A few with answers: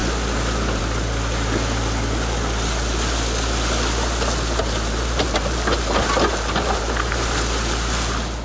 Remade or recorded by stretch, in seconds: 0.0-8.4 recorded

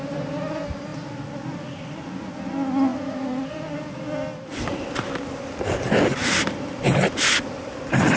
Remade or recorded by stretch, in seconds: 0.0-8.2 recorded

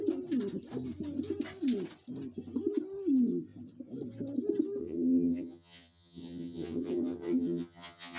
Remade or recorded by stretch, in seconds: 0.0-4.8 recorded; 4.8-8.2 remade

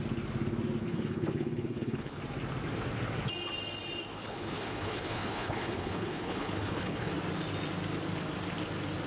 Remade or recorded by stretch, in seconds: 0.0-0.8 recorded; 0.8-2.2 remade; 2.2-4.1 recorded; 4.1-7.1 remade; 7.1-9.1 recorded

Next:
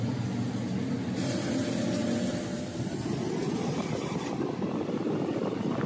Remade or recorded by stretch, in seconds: 0.0-2.0 recorded; 2.0-5.5 remade; 5.5-5.9 recorded

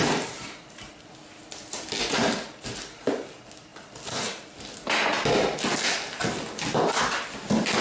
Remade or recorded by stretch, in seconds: 0.0-7.8 recorded

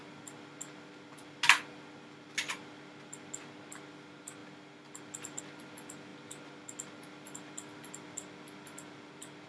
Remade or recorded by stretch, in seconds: 0.0-9.5 recorded

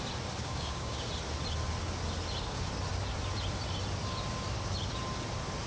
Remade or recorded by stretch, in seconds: 0.0-0.4 recorded; 0.4-1.1 remade; 1.1-5.7 recorded